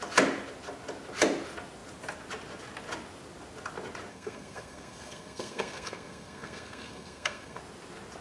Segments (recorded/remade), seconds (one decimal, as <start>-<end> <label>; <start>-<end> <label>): 0.0-4.1 recorded; 4.1-7.6 remade; 7.6-8.2 recorded